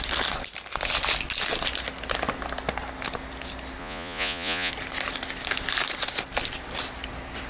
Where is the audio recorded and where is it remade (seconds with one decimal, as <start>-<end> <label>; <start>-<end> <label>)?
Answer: 0.0-3.8 recorded; 3.8-4.7 remade; 4.7-7.5 recorded